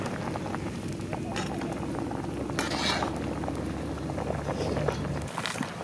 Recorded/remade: recorded